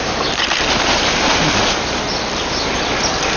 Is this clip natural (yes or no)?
yes